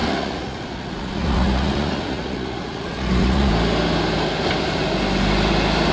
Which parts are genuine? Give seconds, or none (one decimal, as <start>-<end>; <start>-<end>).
3.5-5.9